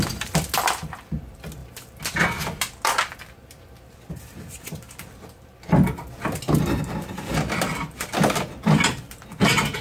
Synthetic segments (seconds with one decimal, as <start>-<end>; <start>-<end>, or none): none